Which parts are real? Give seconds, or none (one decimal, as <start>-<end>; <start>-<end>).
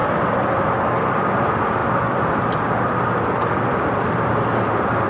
0.6-1.8